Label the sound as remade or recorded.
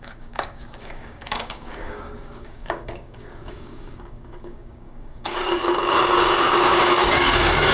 remade